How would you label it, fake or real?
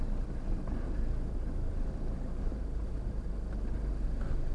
real